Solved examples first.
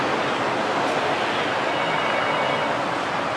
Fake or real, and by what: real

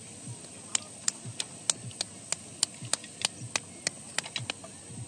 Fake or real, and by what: real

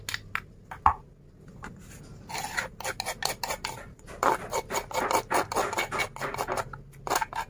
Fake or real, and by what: real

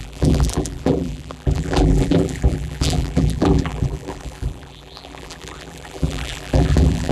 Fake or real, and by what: fake, vocoder, BigVGAN v2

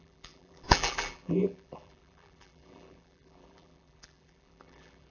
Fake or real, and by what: fake, vocoder, BigVGAN v2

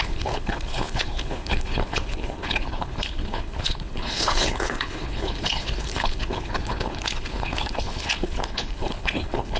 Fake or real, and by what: fake, codec, HILCodec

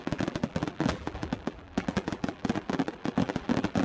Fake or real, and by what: fake, vocoder, BigVGAN v2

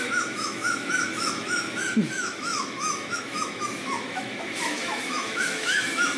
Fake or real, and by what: fake, autoencoder, DAC-VAE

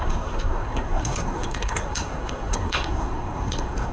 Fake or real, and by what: fake, codec, SNAC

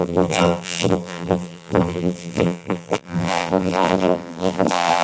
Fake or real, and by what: fake, vocoder, BigVGAN v2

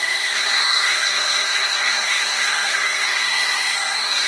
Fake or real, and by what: fake, codec, SNAC